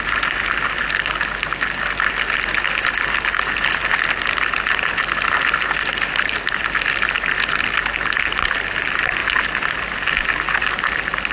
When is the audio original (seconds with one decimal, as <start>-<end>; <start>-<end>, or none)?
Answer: 0.0-11.3